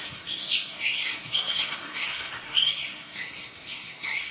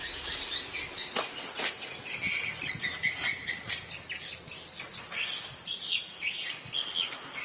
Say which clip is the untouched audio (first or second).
second